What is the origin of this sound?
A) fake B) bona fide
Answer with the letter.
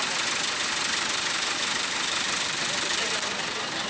A